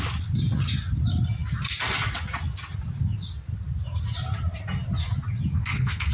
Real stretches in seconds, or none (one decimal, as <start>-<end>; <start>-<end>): 0.0-5.5